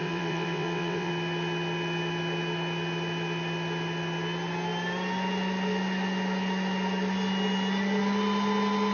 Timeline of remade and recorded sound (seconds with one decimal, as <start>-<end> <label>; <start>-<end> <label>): 0.0-1.1 remade; 1.1-8.9 recorded